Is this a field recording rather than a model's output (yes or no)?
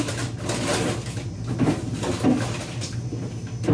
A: yes